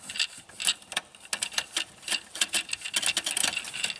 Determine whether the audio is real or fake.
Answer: real